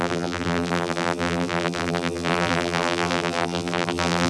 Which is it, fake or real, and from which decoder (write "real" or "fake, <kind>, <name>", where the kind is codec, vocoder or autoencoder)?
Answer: fake, vocoder, BigVGAN v2